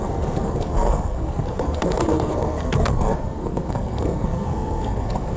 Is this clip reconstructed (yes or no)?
yes